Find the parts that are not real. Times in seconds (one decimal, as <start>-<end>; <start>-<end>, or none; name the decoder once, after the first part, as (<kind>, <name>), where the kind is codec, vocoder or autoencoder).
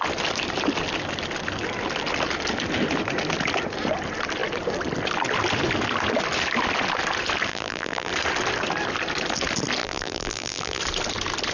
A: 7.5-8.1 (vocoder, BigVGAN v2); 9.8-10.8